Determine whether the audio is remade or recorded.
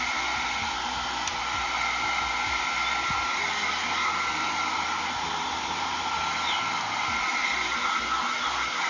recorded